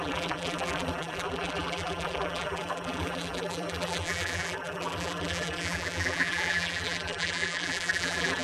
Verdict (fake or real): fake